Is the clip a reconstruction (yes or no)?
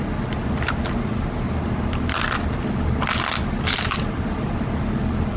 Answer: no